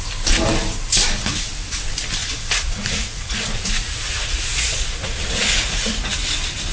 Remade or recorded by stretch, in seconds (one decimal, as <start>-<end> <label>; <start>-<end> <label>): 0.0-2.2 recorded; 2.2-5.9 remade; 5.9-6.7 recorded